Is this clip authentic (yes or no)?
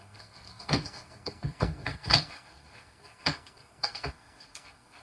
no